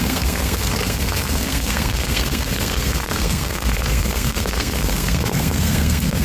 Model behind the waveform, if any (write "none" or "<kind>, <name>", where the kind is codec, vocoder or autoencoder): codec, SNAC